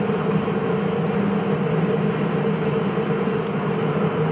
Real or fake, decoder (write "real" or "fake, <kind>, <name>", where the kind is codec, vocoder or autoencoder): real